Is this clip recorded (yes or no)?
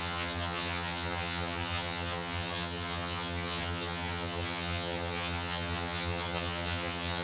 no